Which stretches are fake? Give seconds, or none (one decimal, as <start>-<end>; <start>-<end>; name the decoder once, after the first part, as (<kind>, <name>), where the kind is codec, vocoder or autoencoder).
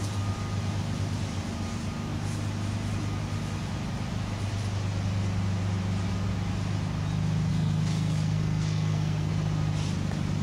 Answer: 7.5-9.3 (codec, SNAC)